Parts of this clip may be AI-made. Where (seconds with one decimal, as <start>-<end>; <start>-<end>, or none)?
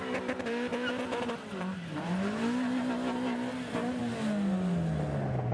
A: none